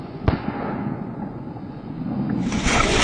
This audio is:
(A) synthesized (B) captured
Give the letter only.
A